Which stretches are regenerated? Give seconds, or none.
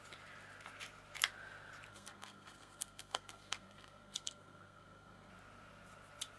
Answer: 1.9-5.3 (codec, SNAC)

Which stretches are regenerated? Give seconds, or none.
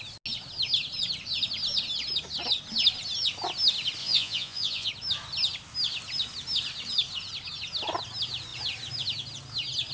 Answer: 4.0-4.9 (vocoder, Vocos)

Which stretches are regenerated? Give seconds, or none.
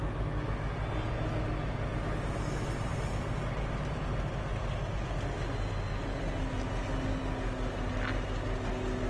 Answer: none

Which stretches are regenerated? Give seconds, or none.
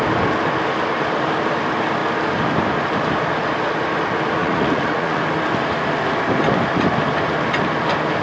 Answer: 4.4-5.2 (vocoder, Vocos)